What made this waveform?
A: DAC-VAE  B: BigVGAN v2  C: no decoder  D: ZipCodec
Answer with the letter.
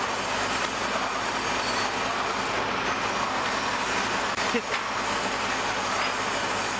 C